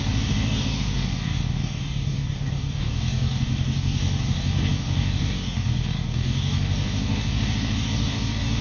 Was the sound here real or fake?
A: fake